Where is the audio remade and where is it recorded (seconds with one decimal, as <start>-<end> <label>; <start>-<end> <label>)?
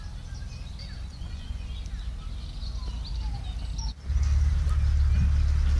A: 0.0-1.1 recorded; 1.1-1.7 remade; 1.7-5.8 recorded